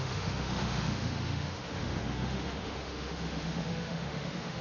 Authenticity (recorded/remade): remade